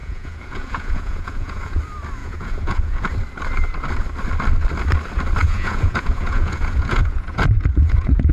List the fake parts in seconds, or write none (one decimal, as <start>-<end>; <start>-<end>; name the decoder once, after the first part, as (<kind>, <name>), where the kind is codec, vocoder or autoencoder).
0.0-1.8 (vocoder, Vocos); 2.2-3.1; 5.4-8.3